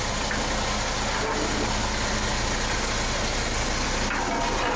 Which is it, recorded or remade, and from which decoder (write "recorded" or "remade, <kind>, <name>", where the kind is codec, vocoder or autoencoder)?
recorded